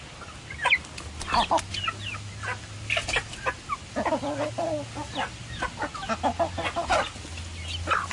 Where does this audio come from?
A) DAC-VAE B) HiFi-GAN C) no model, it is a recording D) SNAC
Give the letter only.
C